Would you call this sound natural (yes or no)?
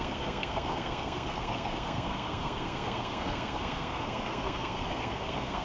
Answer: no